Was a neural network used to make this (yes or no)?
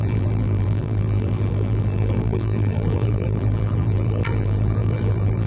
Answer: yes